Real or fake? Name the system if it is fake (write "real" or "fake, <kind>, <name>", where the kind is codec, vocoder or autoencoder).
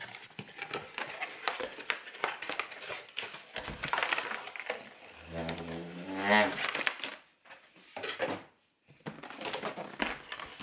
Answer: real